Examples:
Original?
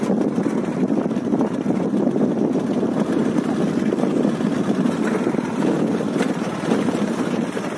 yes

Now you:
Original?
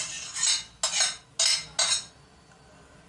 yes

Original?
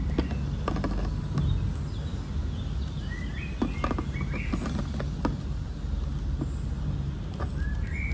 yes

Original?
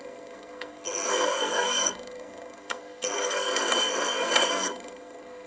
no